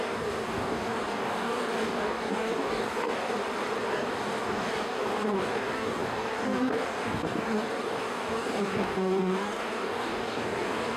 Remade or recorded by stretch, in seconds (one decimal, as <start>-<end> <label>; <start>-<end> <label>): 0.0-3.4 remade; 3.4-3.9 recorded; 3.9-11.0 remade